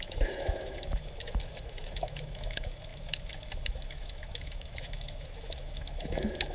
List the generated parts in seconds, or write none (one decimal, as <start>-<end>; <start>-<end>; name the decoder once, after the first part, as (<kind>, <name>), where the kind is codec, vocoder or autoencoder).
0.0-6.5 (autoencoder, DAC-VAE)

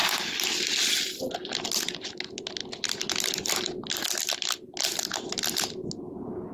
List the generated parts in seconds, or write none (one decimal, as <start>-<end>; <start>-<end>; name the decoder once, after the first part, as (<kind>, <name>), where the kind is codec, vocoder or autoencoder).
none